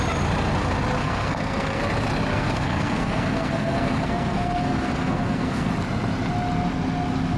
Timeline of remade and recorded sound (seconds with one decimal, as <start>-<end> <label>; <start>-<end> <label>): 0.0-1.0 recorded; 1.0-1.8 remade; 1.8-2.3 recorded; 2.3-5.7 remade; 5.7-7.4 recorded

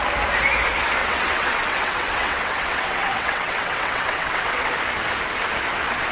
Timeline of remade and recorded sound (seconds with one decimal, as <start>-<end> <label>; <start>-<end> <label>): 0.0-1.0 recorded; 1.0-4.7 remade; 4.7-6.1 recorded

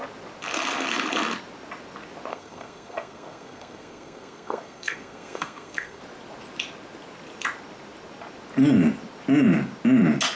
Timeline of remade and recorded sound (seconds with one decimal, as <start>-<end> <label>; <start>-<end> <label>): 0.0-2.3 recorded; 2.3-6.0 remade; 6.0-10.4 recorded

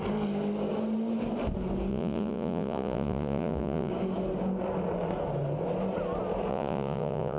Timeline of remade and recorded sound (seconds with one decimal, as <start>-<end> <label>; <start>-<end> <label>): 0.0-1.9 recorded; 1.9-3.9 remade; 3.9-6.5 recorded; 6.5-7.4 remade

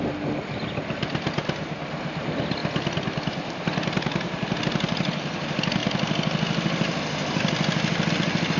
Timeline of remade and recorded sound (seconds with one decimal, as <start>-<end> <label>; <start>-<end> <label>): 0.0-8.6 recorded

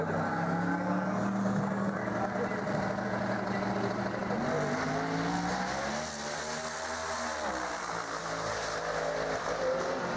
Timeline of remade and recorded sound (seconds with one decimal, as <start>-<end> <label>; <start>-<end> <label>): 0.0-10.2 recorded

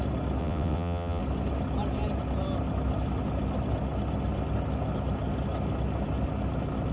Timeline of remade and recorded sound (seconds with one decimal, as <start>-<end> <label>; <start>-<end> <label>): 0.0-0.4 recorded; 0.4-1.2 remade; 1.2-6.9 recorded